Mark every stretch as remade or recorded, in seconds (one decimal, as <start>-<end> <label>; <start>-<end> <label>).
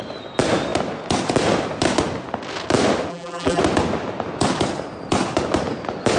0.0-3.1 recorded; 3.1-3.6 remade; 3.6-6.2 recorded